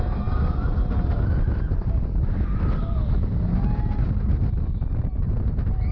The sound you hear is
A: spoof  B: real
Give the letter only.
B